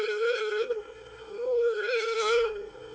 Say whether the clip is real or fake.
fake